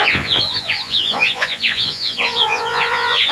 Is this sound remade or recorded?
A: remade